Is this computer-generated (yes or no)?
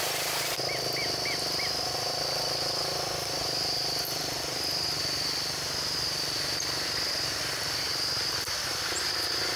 no